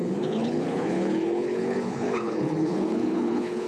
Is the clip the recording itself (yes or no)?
no